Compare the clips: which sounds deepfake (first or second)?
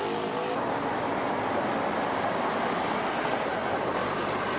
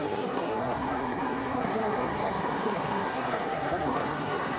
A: second